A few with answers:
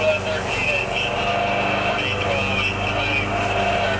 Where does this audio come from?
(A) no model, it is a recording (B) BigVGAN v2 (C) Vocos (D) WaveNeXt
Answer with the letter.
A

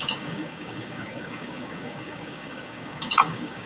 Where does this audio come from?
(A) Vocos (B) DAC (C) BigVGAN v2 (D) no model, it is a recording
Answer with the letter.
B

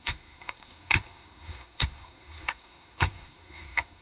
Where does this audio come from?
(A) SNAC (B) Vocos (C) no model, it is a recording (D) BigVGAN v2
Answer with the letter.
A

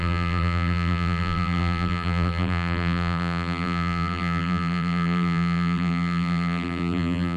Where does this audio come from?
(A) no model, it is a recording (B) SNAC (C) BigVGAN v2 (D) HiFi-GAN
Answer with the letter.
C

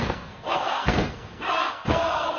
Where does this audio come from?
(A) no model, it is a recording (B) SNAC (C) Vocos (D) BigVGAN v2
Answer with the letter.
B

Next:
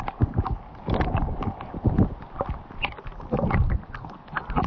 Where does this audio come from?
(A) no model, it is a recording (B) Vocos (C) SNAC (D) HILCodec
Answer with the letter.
A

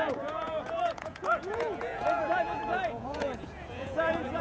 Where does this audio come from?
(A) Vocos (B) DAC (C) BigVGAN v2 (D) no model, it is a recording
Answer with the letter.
A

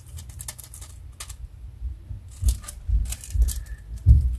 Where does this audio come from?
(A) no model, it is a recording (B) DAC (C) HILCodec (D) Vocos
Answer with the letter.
A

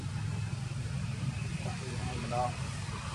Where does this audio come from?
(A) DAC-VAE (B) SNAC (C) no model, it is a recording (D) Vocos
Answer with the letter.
C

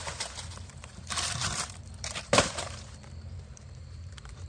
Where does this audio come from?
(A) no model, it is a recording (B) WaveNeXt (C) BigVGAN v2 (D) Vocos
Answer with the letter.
C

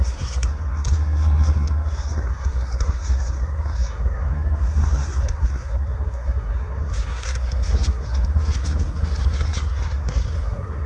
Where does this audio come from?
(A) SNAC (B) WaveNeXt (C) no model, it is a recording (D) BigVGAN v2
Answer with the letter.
A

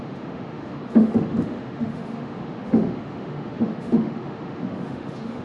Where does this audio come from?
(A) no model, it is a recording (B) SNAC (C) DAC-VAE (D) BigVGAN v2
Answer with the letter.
C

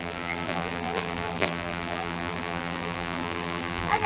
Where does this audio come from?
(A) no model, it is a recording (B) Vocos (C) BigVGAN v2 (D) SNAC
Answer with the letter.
C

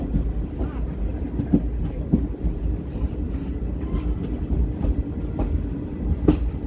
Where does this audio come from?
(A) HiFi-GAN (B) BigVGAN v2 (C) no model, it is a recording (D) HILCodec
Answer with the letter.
C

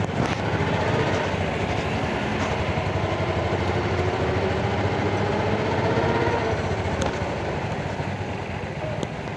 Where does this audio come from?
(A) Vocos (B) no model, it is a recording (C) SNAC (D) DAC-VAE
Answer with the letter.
B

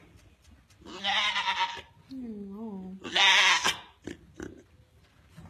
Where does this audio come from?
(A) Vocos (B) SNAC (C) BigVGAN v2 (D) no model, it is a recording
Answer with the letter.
D